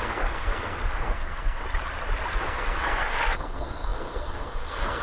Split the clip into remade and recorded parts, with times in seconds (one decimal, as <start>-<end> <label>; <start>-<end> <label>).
0.0-1.6 remade; 1.6-2.4 recorded; 2.4-5.0 remade